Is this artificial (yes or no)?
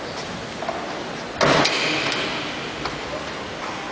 no